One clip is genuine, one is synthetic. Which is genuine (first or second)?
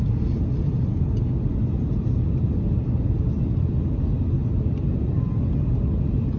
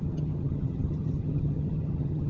first